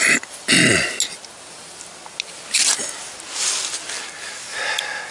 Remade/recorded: recorded